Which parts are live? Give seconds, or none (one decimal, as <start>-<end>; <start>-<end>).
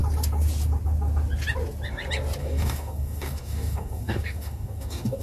0.0-2.4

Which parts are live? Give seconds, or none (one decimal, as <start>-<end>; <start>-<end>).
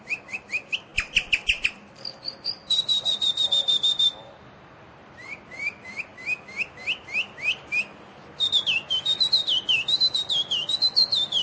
6.1-10.8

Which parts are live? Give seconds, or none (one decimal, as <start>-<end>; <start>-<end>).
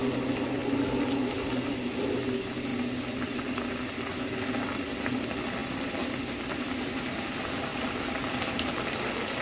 0.0-9.4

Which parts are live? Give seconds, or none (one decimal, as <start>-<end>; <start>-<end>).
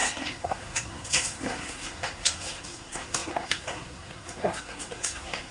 none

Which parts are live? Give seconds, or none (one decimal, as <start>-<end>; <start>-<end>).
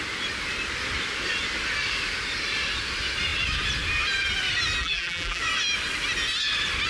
0.0-4.8; 5.4-6.9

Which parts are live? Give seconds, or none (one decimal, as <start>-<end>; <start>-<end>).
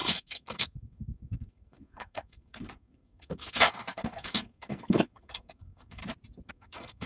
6.0-6.5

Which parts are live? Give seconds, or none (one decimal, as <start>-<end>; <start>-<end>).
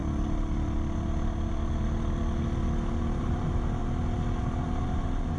0.0-3.2; 3.8-4.8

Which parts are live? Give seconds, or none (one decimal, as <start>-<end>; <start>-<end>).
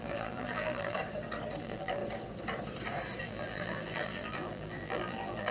1.0-1.6; 2.0-3.2